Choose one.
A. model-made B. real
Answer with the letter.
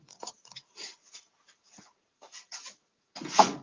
A